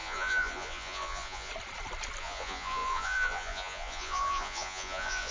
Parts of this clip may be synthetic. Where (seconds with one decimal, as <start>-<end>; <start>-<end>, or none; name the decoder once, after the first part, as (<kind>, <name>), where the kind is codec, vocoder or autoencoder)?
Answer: 0.0-1.5 (vocoder, Vocos); 2.2-5.3